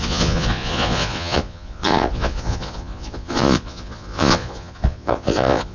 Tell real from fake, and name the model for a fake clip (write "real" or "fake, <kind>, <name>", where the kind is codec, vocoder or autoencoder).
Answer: fake, vocoder, Vocos